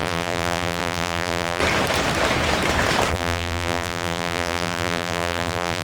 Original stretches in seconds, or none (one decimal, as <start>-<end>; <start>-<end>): 1.6-3.1